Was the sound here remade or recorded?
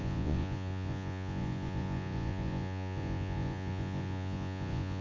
remade